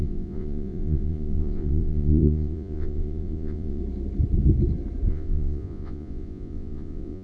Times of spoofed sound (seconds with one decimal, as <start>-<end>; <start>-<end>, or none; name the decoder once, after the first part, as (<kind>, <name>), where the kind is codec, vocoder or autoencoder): 0.0-3.8 (vocoder, Vocos); 5.1-7.2